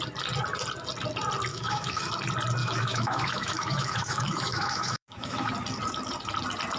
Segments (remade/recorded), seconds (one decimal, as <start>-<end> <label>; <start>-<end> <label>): 0.0-1.5 recorded; 1.5-2.1 remade; 2.1-2.6 recorded; 2.6-5.5 remade; 5.5-6.8 recorded